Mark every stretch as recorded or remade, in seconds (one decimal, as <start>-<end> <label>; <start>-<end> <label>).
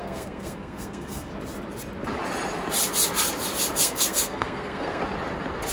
0.0-1.3 remade; 1.3-3.8 recorded; 3.8-5.0 remade; 5.0-5.7 recorded